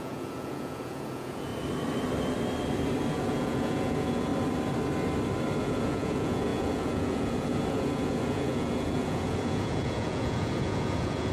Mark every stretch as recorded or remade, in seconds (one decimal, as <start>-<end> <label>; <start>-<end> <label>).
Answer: 0.0-1.5 remade; 1.5-3.1 recorded; 3.1-4.3 remade; 4.3-5.6 recorded; 5.6-11.3 remade